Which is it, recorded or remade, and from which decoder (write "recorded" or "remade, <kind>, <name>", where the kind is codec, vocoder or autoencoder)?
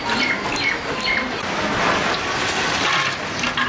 recorded